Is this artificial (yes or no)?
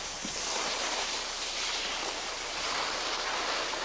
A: no